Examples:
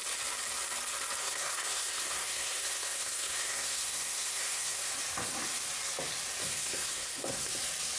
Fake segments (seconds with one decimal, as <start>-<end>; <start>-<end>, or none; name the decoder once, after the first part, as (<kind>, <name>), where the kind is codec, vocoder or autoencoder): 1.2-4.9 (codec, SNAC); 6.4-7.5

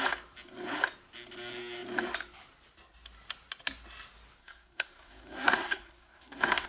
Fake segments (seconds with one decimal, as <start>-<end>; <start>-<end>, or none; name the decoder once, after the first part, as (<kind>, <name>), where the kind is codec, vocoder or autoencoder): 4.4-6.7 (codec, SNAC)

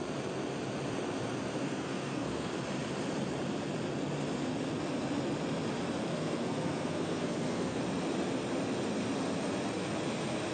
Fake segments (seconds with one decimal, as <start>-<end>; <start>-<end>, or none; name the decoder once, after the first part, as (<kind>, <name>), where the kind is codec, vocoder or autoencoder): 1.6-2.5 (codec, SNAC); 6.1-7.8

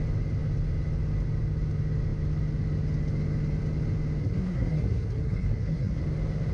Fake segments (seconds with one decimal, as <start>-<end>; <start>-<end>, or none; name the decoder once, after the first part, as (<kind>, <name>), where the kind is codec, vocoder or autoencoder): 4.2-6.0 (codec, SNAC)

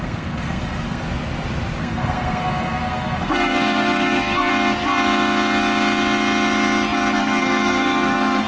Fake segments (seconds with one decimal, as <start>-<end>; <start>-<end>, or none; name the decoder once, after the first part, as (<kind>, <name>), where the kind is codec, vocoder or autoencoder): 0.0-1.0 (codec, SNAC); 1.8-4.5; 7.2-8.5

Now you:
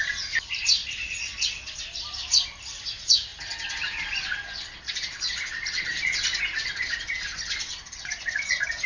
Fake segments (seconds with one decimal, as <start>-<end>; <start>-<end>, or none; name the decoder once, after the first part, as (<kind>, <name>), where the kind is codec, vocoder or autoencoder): none